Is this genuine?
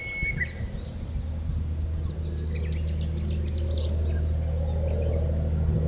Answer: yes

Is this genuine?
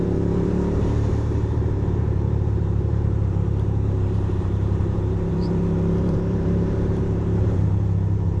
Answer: no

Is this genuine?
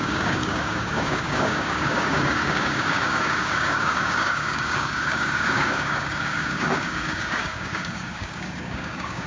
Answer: no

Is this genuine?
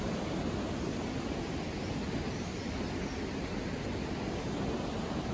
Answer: yes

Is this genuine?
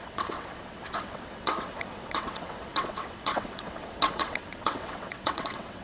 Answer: no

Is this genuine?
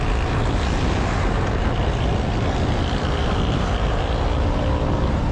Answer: yes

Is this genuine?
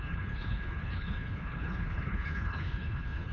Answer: no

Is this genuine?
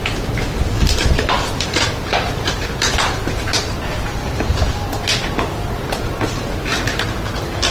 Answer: yes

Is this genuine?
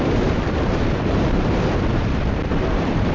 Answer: no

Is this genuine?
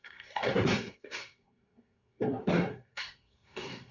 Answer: no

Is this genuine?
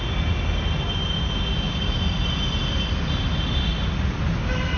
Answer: yes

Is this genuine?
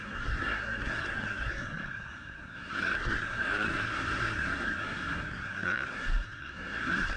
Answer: no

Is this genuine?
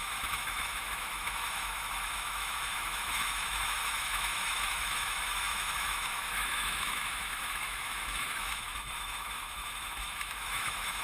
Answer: no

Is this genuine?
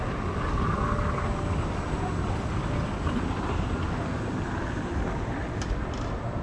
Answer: yes